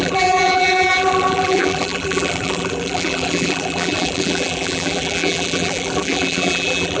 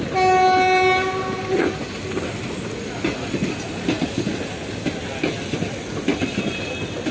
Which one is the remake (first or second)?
first